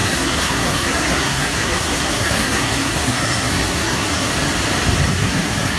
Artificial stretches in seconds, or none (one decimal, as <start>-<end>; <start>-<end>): 0.0-4.3; 5.1-5.8